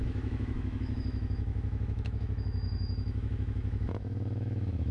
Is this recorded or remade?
remade